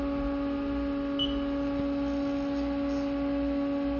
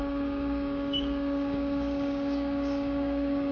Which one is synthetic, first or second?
second